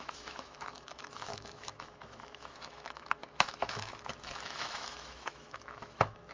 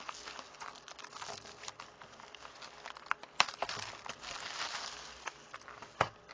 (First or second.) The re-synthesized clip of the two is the first